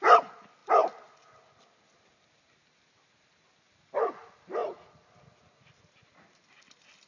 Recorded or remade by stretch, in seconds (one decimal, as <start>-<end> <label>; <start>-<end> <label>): 0.0-7.1 recorded

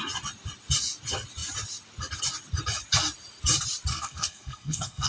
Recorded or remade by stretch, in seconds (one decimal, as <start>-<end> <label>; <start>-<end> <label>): 0.0-3.9 recorded; 3.9-5.1 remade

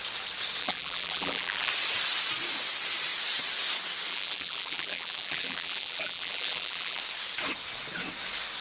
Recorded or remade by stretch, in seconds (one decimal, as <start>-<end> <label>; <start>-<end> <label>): 0.0-0.6 recorded; 0.6-1.7 remade; 1.7-4.1 recorded; 4.1-7.0 remade; 7.0-8.6 recorded

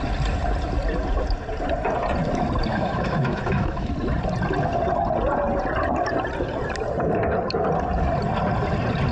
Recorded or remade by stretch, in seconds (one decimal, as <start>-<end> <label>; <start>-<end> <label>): 0.0-2.7 recorded; 2.7-3.9 remade; 3.9-9.1 recorded

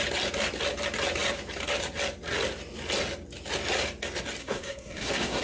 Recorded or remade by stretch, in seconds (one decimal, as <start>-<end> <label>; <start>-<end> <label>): 0.0-4.4 recorded; 4.4-5.4 remade

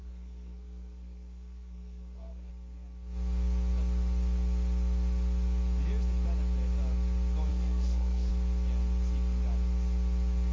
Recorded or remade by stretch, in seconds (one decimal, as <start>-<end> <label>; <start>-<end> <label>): 0.0-2.5 remade; 2.5-7.5 recorded; 7.5-8.3 remade; 8.3-10.5 recorded

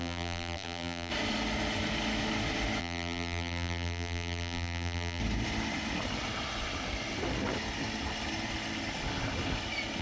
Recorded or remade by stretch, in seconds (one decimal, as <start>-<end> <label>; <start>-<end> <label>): 0.0-1.1 remade; 1.1-2.8 recorded; 2.8-5.2 remade; 5.2-10.0 recorded